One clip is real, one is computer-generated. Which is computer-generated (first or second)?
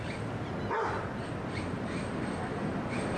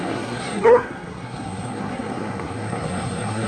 second